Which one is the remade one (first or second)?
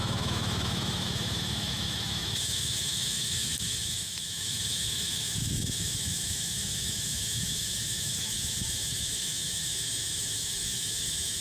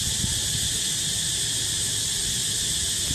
first